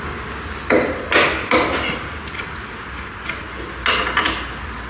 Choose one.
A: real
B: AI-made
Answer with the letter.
A